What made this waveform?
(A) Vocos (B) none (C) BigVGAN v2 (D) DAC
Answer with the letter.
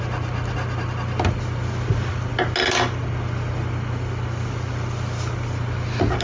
B